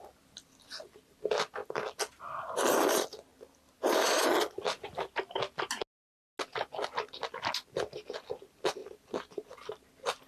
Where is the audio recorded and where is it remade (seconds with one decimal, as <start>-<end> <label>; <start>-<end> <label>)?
0.0-8.8 recorded; 8.8-10.3 remade